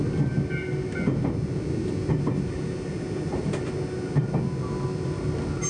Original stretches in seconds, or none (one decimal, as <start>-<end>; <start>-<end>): 0.0-5.7